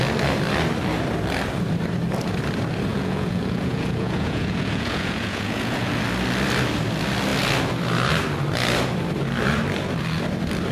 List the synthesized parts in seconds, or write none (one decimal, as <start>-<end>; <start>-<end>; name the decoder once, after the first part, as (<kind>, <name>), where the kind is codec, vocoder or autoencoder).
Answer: 2.9-5.9 (vocoder, Vocos)